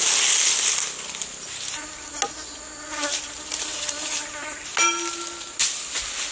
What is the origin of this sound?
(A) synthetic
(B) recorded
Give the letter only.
B